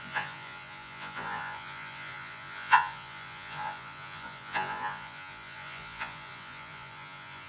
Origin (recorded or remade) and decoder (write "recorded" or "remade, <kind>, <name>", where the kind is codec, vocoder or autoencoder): remade, vocoder, Vocos